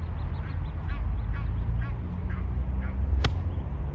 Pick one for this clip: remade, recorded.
recorded